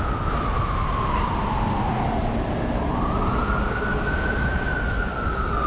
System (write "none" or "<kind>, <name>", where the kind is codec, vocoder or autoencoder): none